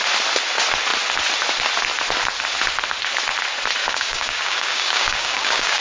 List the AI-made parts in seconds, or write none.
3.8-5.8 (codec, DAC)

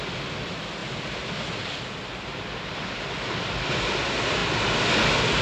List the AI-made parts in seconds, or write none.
none